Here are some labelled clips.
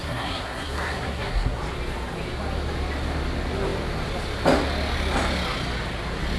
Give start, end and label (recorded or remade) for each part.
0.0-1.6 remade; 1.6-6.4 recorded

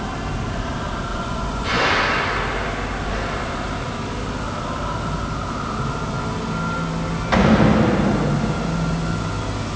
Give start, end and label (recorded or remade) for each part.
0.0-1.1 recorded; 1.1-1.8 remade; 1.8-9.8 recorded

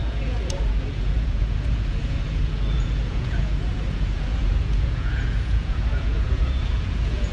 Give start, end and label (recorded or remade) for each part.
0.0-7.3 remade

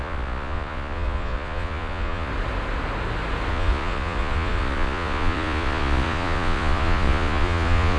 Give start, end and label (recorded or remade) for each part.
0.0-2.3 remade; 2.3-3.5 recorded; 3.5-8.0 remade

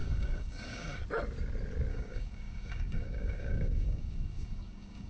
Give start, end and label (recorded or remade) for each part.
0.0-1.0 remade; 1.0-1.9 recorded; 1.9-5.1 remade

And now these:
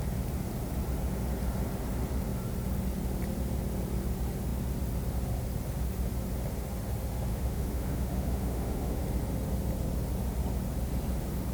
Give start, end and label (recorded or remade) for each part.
0.0-7.3 recorded; 7.3-9.0 remade; 9.0-11.5 recorded

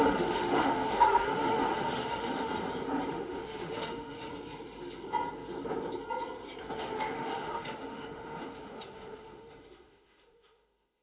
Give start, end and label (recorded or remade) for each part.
0.0-2.5 remade; 2.5-3.1 recorded; 3.1-4.3 remade; 4.3-6.6 recorded; 6.6-11.0 remade

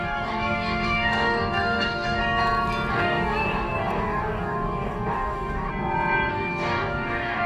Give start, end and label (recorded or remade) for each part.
0.0-2.2 remade; 2.2-2.9 recorded; 2.9-5.7 remade; 5.7-6.3 recorded; 6.3-7.5 remade